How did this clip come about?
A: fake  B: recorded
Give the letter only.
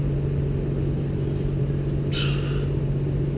B